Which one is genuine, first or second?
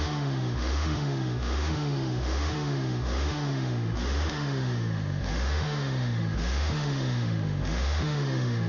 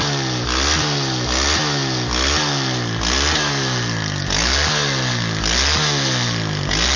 second